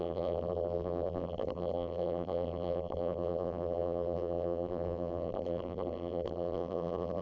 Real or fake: fake